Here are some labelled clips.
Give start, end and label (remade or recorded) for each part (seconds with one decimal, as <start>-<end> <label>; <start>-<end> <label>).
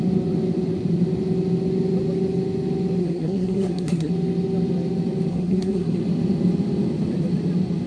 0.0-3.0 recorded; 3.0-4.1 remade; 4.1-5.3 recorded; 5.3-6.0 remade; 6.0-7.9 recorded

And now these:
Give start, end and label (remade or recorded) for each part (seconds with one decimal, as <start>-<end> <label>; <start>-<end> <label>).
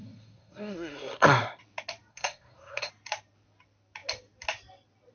0.0-1.6 remade; 1.6-2.1 recorded; 2.1-2.9 remade; 2.9-5.1 recorded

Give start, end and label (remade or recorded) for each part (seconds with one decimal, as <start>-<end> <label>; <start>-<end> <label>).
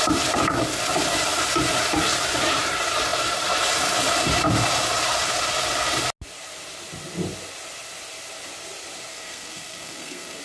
0.0-9.1 recorded; 9.1-10.4 remade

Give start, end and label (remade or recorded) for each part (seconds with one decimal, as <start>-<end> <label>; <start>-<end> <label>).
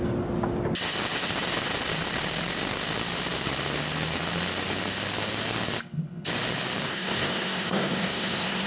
0.0-6.9 recorded; 6.9-8.7 remade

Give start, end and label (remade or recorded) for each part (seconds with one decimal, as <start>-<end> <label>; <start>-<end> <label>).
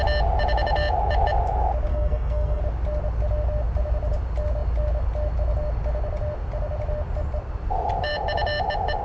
0.0-1.9 recorded; 1.9-2.6 remade; 2.6-9.0 recorded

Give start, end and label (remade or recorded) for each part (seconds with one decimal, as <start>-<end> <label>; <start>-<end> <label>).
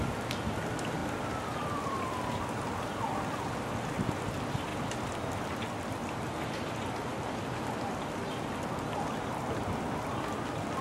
0.0-10.8 recorded